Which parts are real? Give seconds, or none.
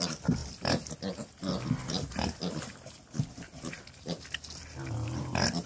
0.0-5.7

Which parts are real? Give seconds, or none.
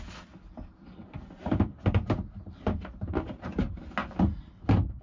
0.0-1.4; 3.6-5.0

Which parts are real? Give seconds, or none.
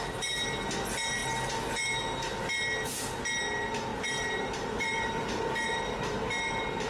0.0-3.9; 5.8-6.9